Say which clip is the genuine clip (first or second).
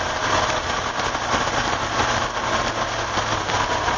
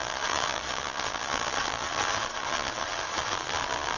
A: first